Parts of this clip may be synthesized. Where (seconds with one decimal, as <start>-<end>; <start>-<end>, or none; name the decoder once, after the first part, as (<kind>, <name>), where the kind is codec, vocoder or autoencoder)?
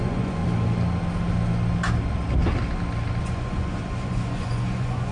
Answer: 0.0-0.4 (vocoder, Vocos); 3.2-5.1